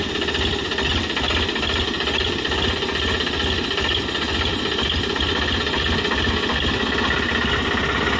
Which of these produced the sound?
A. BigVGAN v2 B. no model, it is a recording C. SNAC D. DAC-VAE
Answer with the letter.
B